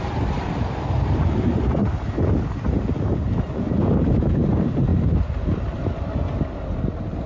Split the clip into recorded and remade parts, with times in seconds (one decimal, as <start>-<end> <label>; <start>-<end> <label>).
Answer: 0.0-1.8 remade; 1.8-2.9 recorded; 2.9-7.3 remade